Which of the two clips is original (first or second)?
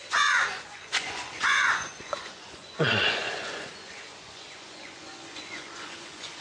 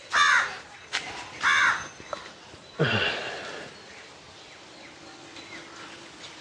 second